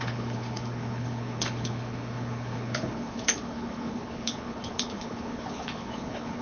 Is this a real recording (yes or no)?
no